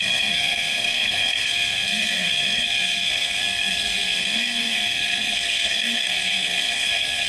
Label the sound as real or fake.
fake